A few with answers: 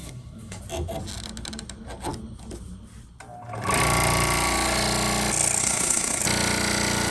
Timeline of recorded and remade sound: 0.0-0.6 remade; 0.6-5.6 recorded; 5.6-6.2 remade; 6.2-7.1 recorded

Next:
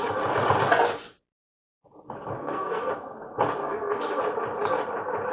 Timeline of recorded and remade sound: 0.0-2.4 recorded; 2.4-2.9 remade; 2.9-3.6 recorded; 3.6-4.2 remade; 4.2-5.3 recorded

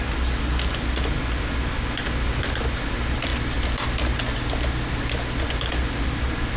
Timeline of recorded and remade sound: 0.0-6.6 recorded

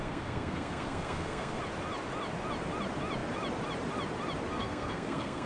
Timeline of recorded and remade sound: 0.0-1.6 remade; 1.6-4.5 recorded; 4.5-5.5 remade

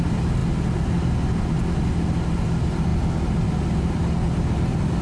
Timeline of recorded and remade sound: 0.0-5.0 recorded

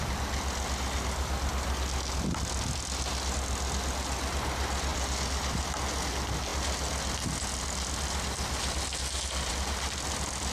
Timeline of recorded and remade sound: 0.0-10.5 recorded

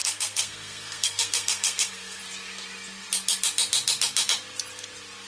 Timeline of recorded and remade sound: 0.0-2.2 remade; 2.2-5.3 recorded

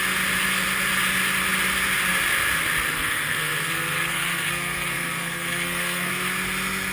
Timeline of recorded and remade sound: 0.0-2.9 recorded; 2.9-6.1 remade; 6.1-6.9 recorded